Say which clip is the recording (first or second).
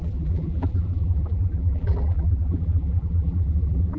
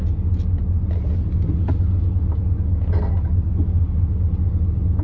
second